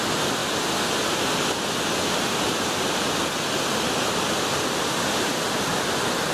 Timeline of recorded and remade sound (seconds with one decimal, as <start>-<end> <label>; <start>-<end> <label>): 0.0-0.4 remade; 0.4-3.7 recorded; 3.7-5.7 remade; 5.7-6.3 recorded